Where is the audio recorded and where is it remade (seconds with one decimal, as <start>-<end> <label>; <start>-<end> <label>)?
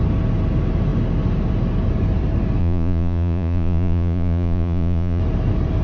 0.0-2.6 recorded; 2.6-5.2 remade; 5.2-5.8 recorded